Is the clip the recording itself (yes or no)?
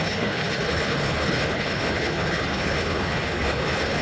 no